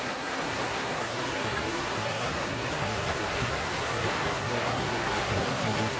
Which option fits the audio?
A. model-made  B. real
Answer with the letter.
A